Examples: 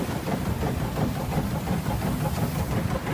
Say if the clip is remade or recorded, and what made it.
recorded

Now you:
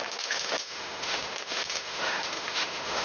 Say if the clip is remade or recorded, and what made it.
remade, autoencoder, DAC-VAE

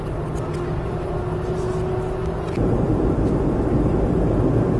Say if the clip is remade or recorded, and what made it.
recorded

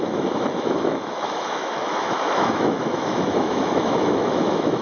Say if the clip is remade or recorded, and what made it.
remade, autoencoder, DAC-VAE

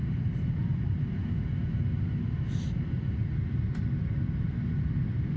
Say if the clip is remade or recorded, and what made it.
recorded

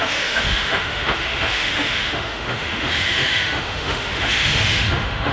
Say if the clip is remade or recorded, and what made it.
remade, autoencoder, DAC-VAE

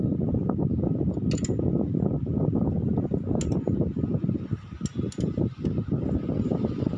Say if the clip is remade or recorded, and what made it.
recorded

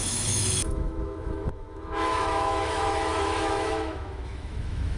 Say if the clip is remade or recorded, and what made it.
remade, autoencoder, DAC-VAE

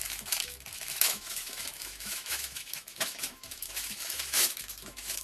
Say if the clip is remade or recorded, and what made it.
remade, autoencoder, DAC-VAE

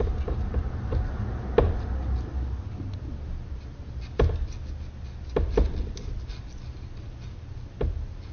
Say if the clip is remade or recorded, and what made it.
recorded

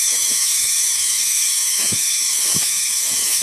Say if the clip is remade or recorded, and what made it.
remade, autoencoder, DAC-VAE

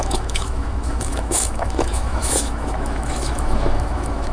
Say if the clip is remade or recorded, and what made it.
remade, autoencoder, DAC-VAE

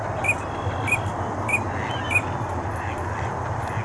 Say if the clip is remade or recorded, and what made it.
recorded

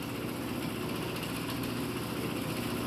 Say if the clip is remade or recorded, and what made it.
recorded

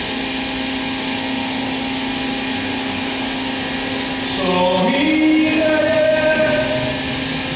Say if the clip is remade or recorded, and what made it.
recorded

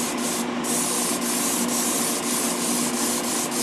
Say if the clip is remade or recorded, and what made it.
recorded